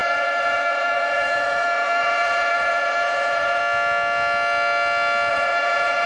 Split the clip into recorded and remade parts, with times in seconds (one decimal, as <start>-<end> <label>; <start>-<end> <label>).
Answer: 0.0-3.6 remade; 3.6-5.3 recorded; 5.3-6.1 remade